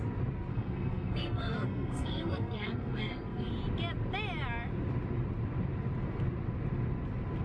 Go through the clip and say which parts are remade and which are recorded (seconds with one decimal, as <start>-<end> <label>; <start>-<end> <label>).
0.0-0.5 recorded; 0.5-3.5 remade; 3.5-7.4 recorded